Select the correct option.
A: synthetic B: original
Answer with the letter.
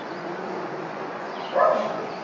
A